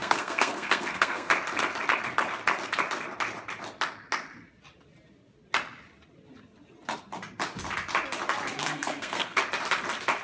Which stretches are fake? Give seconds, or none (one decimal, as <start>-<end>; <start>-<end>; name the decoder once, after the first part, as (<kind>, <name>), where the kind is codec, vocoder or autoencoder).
0.0-1.3 (codec, SNAC); 8.6-9.4